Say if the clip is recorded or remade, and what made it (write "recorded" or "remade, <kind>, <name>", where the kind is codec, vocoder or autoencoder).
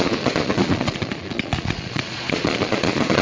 remade, vocoder, Vocos